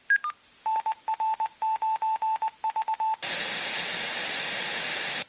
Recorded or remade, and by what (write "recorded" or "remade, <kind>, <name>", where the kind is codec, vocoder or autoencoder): recorded